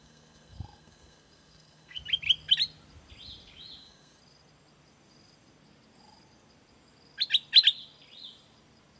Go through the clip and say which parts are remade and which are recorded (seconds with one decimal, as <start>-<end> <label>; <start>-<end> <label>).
0.0-2.0 remade; 2.0-3.8 recorded; 3.8-4.2 remade; 4.2-9.0 recorded